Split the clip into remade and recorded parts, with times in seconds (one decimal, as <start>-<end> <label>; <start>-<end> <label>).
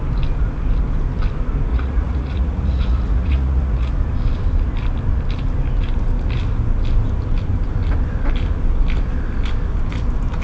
0.0-1.7 recorded; 1.7-3.9 remade; 3.9-10.4 recorded